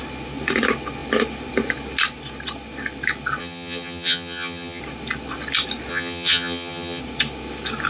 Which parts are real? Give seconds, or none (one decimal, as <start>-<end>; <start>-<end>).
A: 0.0-3.4; 4.8-5.9; 7.0-7.9